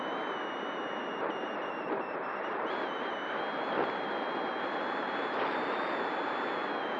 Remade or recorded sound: recorded